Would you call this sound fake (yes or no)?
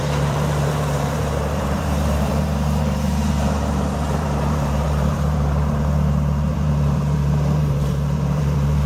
yes